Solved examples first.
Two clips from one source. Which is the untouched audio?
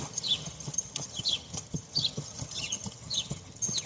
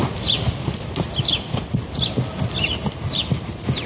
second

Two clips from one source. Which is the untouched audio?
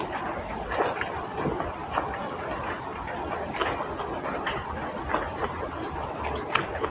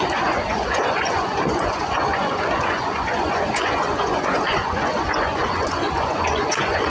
first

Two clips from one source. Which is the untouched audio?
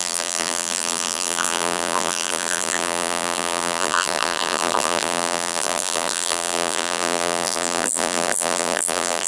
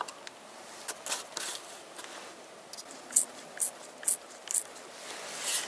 second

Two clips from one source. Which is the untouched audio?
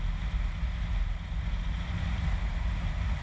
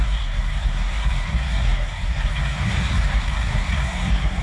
first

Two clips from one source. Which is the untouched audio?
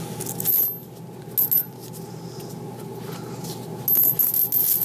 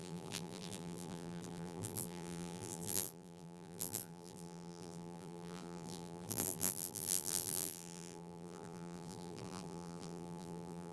first